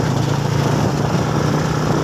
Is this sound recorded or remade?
recorded